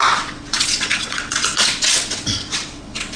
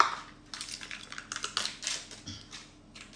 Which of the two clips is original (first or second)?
second